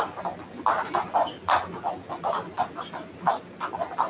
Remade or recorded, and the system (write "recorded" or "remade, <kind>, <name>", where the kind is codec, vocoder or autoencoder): recorded